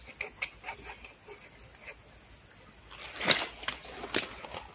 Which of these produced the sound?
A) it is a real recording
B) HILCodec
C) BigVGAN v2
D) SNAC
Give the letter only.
A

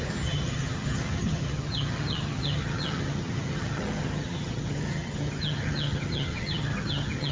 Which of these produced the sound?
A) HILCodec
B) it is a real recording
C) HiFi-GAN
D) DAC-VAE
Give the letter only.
C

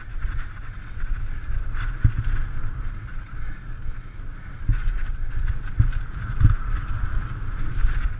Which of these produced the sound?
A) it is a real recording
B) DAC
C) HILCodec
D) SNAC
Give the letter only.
A